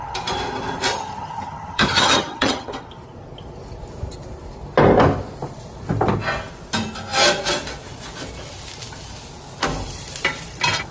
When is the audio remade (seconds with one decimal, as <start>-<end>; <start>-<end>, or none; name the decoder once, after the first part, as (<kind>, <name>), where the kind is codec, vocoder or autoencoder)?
0.9-2.7 (vocoder, HiFi-GAN)